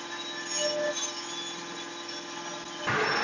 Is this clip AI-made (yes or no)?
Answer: no